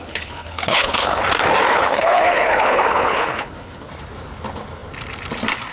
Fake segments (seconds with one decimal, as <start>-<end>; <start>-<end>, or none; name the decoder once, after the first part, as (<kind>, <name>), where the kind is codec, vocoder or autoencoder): 0.0-1.2 (codec, HILCodec); 1.7-3.9

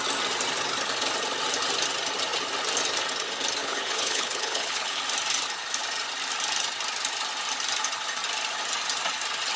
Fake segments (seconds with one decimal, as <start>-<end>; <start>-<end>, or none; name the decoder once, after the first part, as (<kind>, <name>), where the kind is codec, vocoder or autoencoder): 3.6-5.0 (codec, HILCodec)

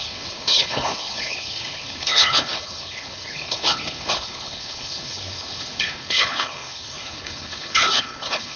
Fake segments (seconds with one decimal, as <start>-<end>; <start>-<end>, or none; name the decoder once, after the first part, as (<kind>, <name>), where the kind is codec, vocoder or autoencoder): 0.0-8.6 (codec, HILCodec)

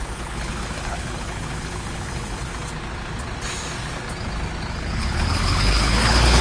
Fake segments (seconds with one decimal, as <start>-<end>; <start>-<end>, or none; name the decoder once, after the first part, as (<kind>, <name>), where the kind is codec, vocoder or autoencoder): 0.0-2.5 (codec, HILCodec); 4.7-6.4

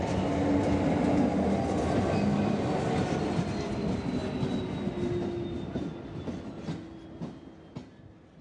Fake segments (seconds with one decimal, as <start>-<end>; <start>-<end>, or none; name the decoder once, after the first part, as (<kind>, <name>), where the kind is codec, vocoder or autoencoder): none

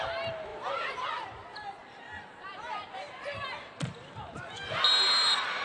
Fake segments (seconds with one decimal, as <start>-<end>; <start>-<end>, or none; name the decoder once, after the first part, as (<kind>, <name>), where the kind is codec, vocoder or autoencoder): none

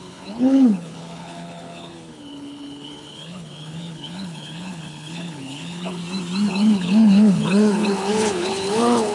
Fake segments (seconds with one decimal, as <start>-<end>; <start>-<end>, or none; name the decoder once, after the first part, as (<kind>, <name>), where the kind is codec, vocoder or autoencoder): 0.0-6.0 (codec, HILCodec); 6.5-9.1